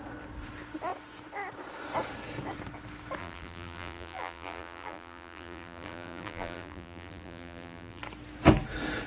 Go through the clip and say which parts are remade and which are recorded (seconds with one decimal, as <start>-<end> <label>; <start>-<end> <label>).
0.0-3.2 recorded; 3.2-8.0 remade; 8.0-9.1 recorded